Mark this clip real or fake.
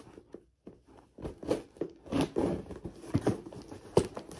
real